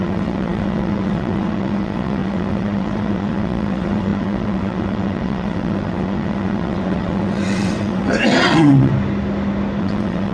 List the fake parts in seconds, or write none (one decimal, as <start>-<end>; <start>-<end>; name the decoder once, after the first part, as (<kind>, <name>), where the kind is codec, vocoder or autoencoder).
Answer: 0.0-8.9 (vocoder, WaveNeXt); 9.8-10.3